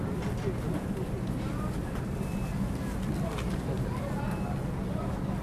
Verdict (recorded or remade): recorded